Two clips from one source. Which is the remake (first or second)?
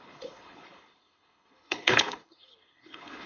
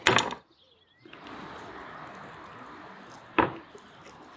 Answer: first